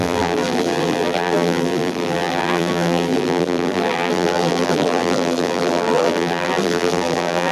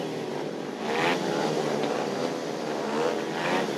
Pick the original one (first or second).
second